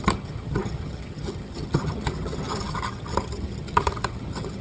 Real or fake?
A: fake